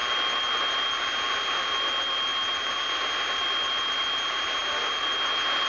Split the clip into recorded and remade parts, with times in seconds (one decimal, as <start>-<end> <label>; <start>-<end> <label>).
0.0-5.7 recorded